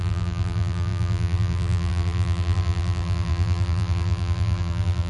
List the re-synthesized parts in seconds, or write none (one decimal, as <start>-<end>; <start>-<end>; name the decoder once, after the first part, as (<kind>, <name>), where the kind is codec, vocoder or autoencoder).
0.0-5.1 (vocoder, BigVGAN v2)